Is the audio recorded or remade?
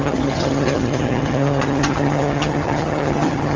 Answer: remade